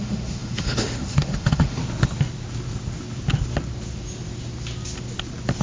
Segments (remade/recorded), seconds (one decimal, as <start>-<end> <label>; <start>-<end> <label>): 0.0-1.8 remade; 1.8-5.6 recorded